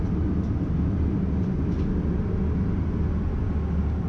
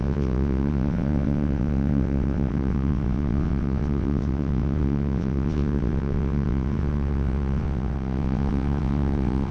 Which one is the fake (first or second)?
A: second